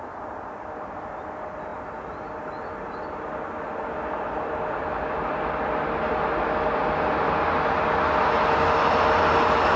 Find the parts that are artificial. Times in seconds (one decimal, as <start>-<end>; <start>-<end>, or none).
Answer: none